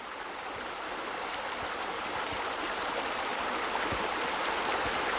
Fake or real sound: real